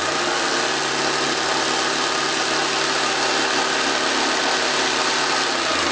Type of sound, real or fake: real